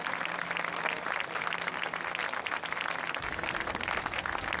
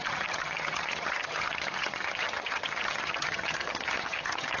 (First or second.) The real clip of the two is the first